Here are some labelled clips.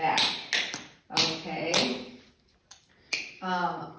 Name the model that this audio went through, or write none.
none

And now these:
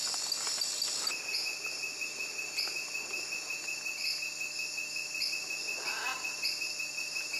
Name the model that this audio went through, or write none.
none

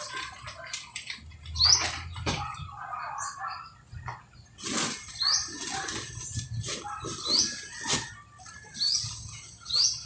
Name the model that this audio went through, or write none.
none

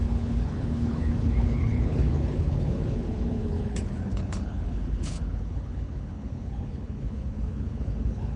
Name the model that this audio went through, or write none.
codec, HILCodec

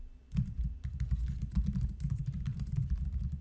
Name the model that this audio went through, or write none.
none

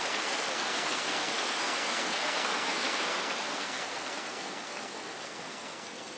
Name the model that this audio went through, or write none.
codec, SNAC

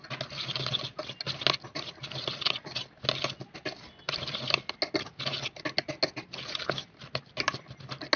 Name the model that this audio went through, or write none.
none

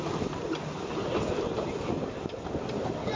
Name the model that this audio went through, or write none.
none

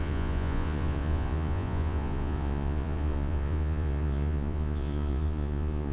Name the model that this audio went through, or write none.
vocoder, Vocos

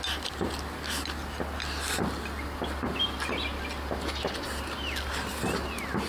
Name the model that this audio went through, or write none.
none